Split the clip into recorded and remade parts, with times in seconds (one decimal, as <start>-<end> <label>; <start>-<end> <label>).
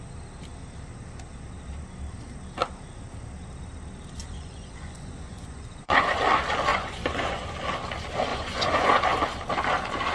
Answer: 0.0-4.2 recorded; 4.2-6.2 remade; 6.2-6.7 recorded; 6.7-7.5 remade; 7.5-8.3 recorded; 8.3-8.9 remade; 8.9-10.1 recorded